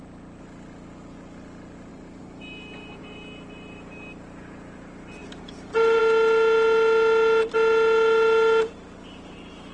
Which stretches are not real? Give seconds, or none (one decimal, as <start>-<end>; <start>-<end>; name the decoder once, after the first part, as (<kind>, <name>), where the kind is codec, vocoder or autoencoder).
1.9-3.0 (vocoder, BigVGAN v2); 5.2-6.0